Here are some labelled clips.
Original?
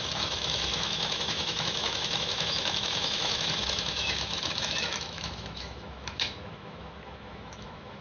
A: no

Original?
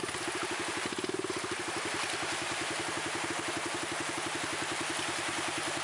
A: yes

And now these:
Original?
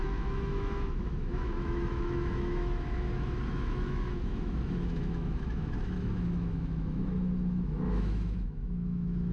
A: no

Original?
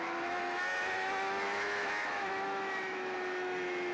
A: no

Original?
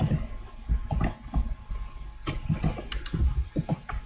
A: yes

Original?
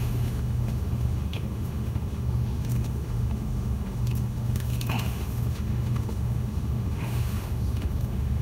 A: no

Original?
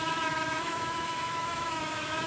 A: no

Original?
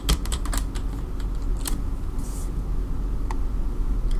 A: yes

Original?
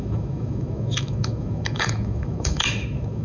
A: no